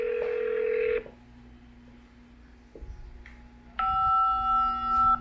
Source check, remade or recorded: recorded